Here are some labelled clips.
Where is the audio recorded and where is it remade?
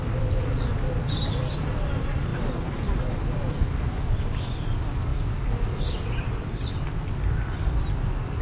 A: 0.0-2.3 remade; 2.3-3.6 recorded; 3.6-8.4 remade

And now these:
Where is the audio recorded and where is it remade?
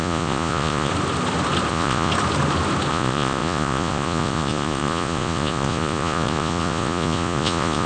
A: 0.0-0.9 remade; 0.9-1.7 recorded; 1.7-2.1 remade; 2.1-2.9 recorded; 2.9-7.9 remade